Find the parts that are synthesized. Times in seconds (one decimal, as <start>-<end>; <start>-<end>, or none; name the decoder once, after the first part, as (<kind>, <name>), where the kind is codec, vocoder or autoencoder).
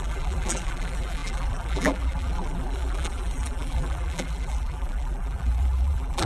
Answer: 0.0-6.2 (vocoder, BigVGAN v2)